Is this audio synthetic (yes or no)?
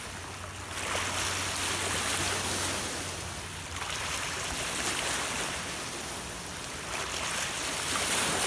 no